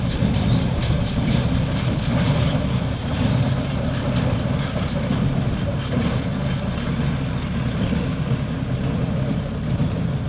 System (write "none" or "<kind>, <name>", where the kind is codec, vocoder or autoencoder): none